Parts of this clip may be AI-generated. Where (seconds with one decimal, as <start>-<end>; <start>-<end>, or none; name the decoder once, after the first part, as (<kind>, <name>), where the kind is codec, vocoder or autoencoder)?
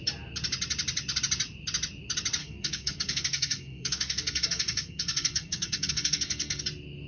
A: 2.4-6.6 (codec, SNAC)